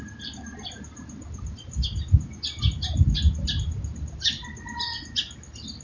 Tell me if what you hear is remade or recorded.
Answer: recorded